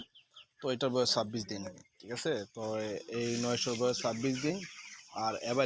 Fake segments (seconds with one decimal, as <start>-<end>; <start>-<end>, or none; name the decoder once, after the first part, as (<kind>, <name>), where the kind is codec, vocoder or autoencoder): none